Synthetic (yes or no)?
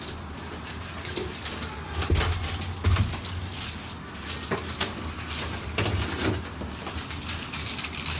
no